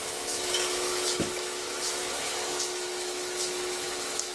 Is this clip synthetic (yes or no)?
yes